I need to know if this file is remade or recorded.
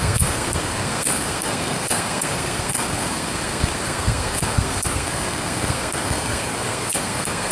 remade